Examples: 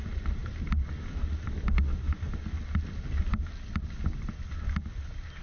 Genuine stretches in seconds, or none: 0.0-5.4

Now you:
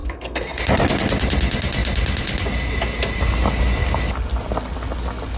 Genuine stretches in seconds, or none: 0.6-5.4

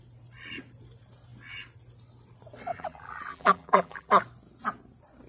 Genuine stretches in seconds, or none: 0.0-2.7; 4.1-5.3

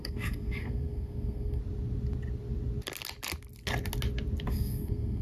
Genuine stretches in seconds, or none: 1.6-4.5

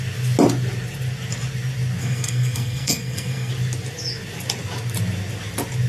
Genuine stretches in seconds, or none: 0.0-2.0; 3.5-5.9

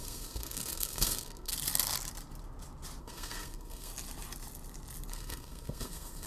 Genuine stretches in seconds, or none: 1.5-3.0; 3.9-5.1